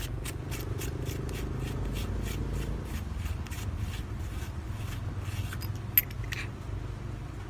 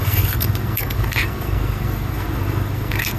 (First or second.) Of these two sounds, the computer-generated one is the second